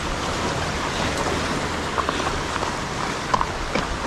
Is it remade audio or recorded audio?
remade